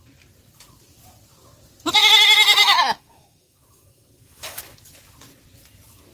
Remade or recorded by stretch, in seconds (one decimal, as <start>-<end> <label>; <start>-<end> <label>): 0.0-2.6 recorded; 2.6-4.6 remade; 4.6-6.1 recorded